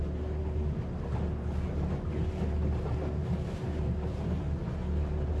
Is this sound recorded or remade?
recorded